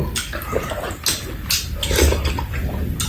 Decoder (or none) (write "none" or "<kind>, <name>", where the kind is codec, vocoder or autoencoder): none